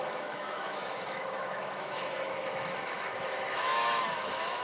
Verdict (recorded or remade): remade